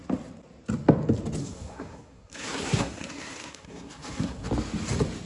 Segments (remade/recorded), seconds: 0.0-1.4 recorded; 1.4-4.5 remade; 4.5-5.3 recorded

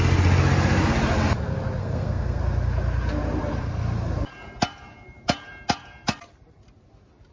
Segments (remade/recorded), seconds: 0.0-1.8 recorded; 1.8-2.4 remade; 2.4-7.3 recorded

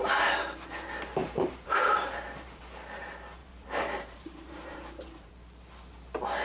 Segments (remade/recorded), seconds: 0.0-1.2 recorded; 1.2-2.6 remade; 2.6-3.4 recorded; 3.4-5.3 remade; 5.3-6.4 recorded

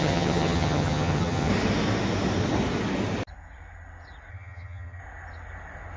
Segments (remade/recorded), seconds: 0.0-1.5 remade; 1.5-4.3 recorded; 4.3-5.0 remade; 5.0-6.0 recorded

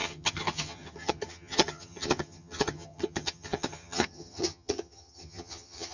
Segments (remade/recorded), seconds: 0.0-5.9 remade

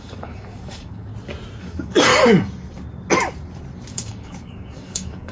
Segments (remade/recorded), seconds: 0.0-1.1 remade; 1.1-1.6 recorded; 1.6-2.1 remade; 2.1-3.9 recorded; 3.9-5.3 remade